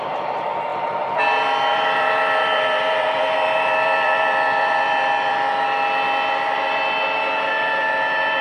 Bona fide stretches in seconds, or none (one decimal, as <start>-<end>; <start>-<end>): 0.0-1.7; 5.5-8.4